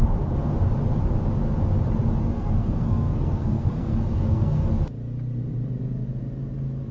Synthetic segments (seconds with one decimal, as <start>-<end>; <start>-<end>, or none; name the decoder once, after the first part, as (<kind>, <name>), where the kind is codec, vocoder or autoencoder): 2.2-4.7 (codec, SNAC)